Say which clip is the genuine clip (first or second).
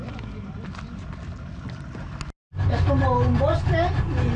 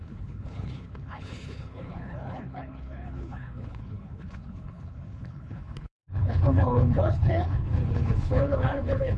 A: first